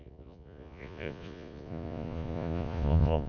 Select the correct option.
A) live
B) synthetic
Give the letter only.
B